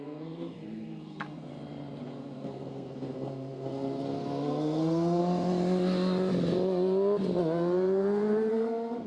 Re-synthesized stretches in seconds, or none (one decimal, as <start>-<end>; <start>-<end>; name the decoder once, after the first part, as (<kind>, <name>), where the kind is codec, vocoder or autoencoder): 0.0-1.5 (codec, SNAC); 2.0-5.2; 8.5-9.1